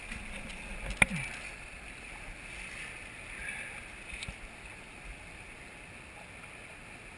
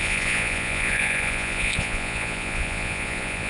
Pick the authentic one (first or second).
first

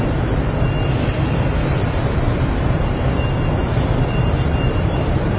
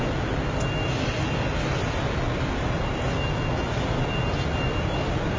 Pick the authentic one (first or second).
second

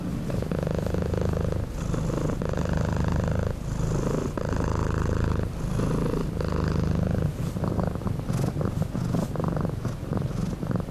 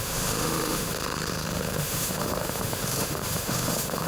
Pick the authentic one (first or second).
first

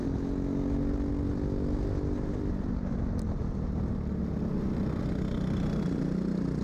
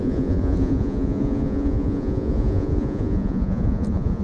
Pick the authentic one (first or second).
first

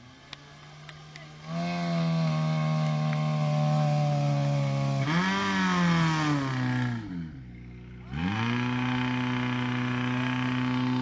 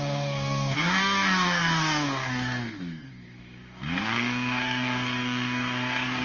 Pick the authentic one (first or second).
first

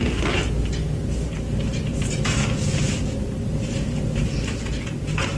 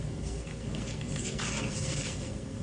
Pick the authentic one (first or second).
first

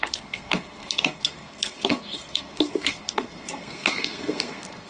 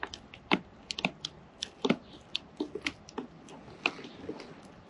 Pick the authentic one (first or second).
second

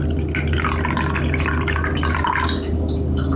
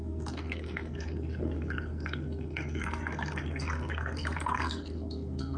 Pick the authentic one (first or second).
first